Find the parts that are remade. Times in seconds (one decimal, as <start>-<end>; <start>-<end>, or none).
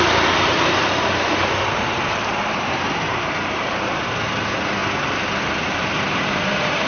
0.0-4.8; 5.4-6.9